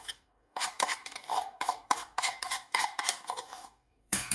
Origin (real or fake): fake